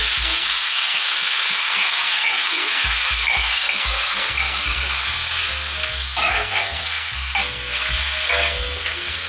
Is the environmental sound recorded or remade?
remade